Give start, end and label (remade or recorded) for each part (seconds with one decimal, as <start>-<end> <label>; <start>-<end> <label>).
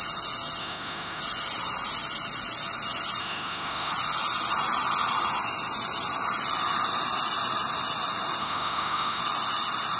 0.0-0.6 recorded; 0.6-1.2 remade; 1.2-3.2 recorded; 3.2-3.9 remade; 3.9-8.4 recorded; 8.4-9.2 remade; 9.2-10.0 recorded